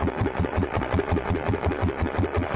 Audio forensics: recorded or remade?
remade